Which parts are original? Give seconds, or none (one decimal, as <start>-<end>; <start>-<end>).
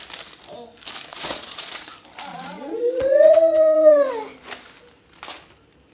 0.0-1.1; 1.9-2.3; 4.1-5.9